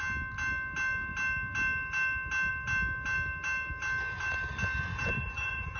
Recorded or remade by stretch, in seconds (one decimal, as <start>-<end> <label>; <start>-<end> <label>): 0.0-4.9 recorded; 4.9-5.8 remade